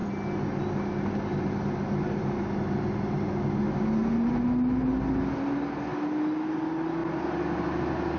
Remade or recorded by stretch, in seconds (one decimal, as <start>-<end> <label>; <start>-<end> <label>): 0.0-8.2 recorded